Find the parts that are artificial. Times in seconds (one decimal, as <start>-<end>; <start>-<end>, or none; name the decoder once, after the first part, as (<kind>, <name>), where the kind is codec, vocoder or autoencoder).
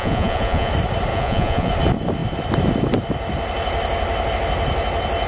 0.0-0.7 (vocoder, Vocos); 1.1-1.7